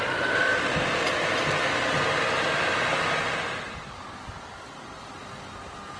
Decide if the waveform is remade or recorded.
recorded